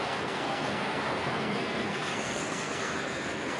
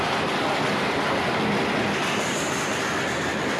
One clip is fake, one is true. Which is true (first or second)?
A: second